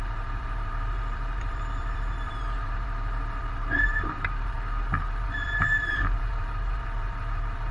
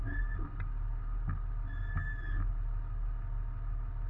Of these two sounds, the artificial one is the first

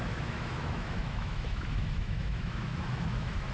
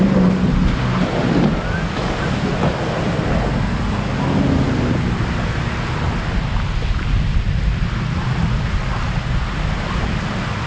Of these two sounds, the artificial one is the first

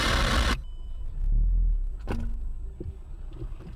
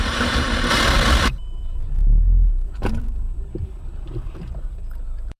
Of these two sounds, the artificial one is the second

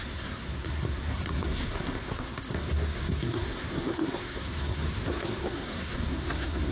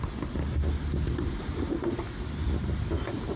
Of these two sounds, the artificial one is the first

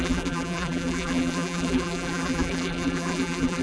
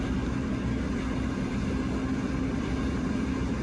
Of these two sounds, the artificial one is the first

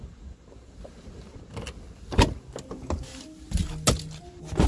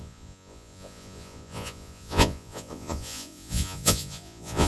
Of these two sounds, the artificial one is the second